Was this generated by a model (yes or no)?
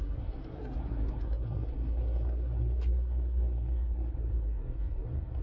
yes